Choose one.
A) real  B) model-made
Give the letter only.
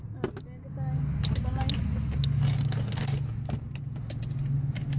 A